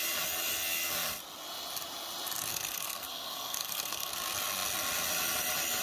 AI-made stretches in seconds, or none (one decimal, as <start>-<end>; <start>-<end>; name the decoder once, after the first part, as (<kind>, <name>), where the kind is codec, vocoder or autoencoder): 2.5-4.1 (codec, SNAC)